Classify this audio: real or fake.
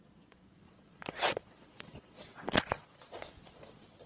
fake